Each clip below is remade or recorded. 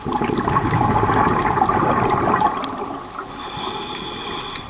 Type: recorded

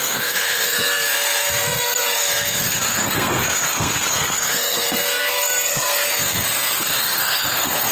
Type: remade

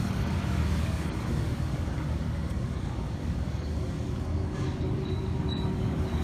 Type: remade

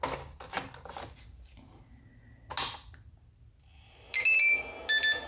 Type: recorded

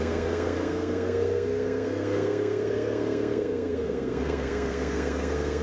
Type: remade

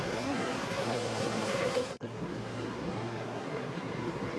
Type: remade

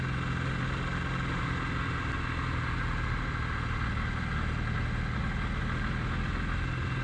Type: recorded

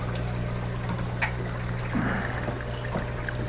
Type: recorded